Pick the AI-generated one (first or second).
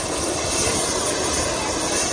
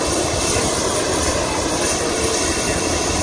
second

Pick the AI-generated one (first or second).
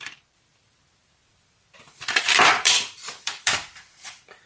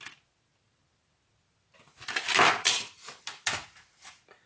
first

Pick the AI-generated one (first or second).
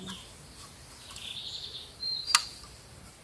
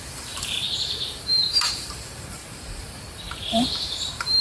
second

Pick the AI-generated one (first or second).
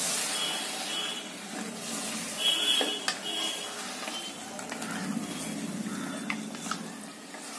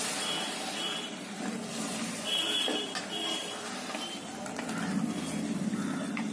second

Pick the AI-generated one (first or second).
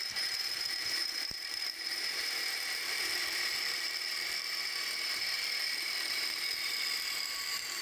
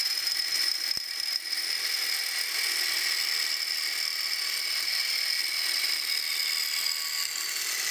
first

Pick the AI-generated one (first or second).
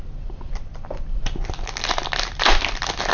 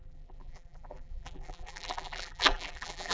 second